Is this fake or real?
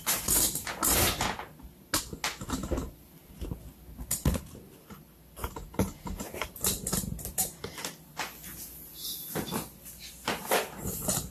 real